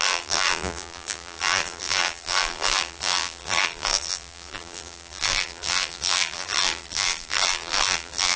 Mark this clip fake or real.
fake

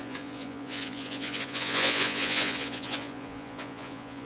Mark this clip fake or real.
fake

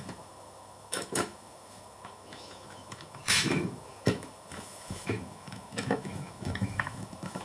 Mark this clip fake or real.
fake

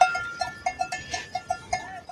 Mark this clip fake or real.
real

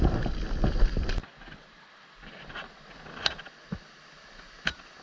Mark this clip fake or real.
real